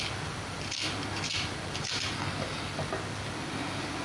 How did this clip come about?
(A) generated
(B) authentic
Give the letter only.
B